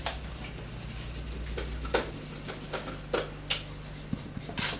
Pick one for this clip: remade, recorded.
recorded